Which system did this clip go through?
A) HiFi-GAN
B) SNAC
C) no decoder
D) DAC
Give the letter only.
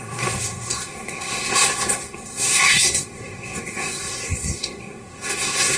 B